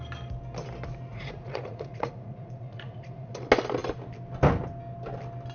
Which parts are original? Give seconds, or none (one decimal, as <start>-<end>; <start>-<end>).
0.0-1.1; 3.3-5.5